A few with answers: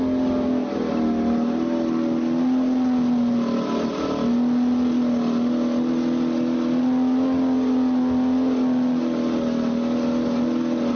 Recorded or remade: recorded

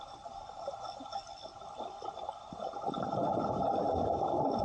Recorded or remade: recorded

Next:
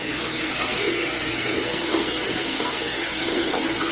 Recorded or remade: remade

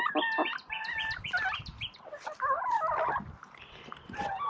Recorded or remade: recorded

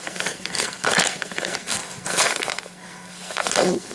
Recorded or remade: remade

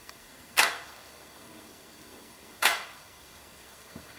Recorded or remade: remade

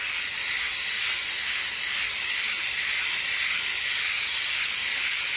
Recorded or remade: recorded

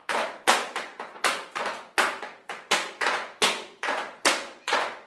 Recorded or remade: remade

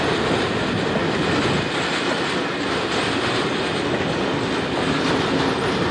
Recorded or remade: recorded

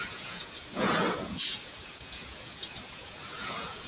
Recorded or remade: remade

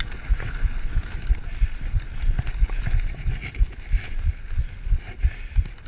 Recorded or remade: recorded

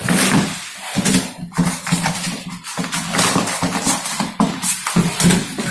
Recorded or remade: recorded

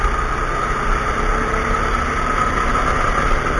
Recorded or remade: recorded